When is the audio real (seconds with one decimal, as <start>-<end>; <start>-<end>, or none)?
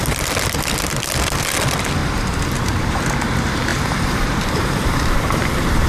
0.0-2.0; 3.0-3.7